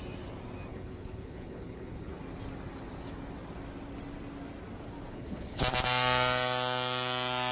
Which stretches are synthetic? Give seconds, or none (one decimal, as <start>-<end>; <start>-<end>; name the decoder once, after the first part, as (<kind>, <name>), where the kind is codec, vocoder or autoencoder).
0.7-2.1 (codec, HILCodec); 5.1-5.6